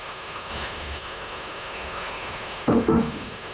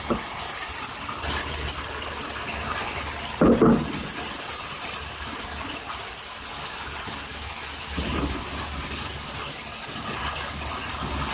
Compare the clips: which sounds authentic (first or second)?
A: second